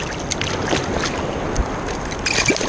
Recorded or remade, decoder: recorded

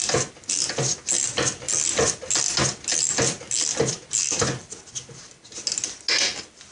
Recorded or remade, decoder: recorded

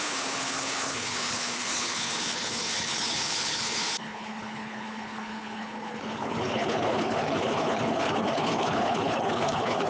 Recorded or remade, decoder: remade, codec, HILCodec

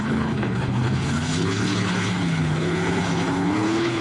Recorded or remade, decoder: remade, codec, HILCodec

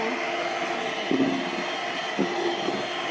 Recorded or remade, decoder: recorded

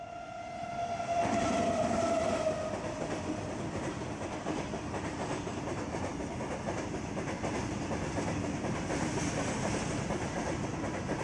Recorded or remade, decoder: recorded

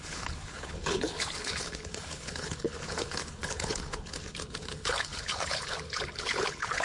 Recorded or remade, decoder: remade, codec, HILCodec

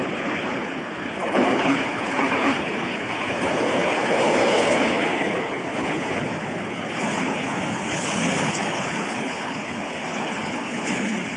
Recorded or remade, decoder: remade, codec, HILCodec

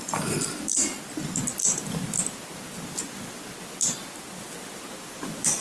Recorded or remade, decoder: recorded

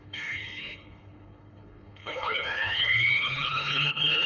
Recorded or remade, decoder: remade, codec, HILCodec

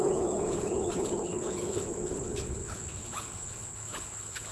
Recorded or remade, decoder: remade, codec, HILCodec